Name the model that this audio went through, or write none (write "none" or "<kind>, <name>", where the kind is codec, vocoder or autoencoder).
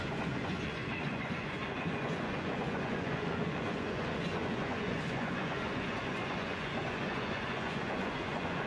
vocoder, Vocos